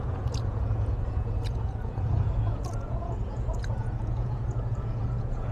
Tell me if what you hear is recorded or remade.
remade